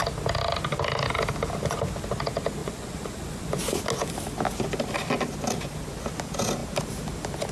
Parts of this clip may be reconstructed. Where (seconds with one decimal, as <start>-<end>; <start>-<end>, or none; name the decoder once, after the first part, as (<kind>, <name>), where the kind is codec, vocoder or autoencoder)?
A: 2.6-3.5 (vocoder, Vocos)